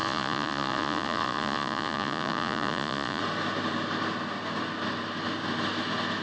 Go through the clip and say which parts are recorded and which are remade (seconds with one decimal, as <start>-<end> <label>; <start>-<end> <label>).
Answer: 0.0-3.2 remade; 3.2-6.2 recorded